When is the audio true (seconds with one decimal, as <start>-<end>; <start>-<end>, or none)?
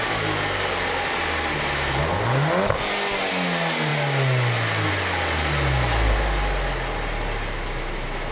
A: 0.0-8.3